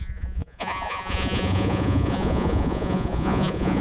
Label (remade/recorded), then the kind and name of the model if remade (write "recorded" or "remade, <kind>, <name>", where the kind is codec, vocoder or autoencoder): remade, vocoder, Vocos